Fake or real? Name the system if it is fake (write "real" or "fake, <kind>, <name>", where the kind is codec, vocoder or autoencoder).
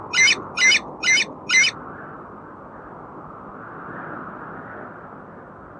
real